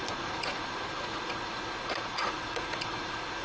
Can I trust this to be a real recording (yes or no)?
no